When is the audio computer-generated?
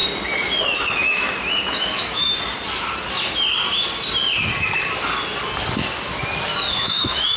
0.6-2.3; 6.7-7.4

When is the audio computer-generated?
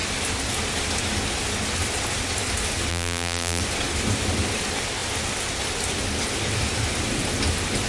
2.9-3.6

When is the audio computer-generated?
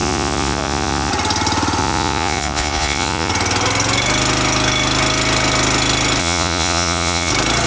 0.0-1.1; 1.8-3.3; 6.2-7.3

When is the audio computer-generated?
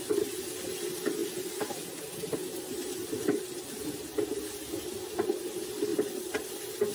none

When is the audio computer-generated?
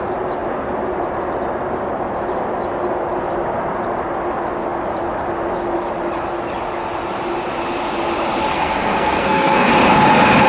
8.5-9.7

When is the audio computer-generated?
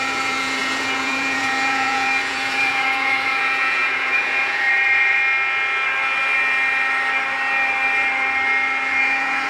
0.0-5.2; 9.0-9.5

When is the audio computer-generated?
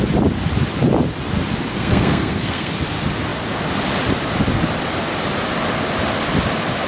1.7-2.7